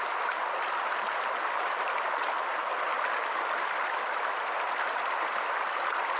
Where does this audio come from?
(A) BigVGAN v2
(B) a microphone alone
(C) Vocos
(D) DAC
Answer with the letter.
A